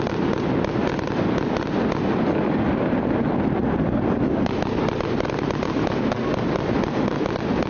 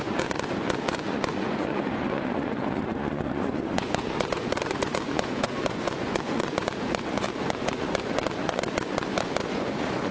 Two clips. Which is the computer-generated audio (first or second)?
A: second